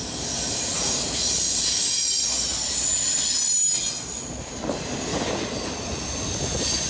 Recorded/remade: recorded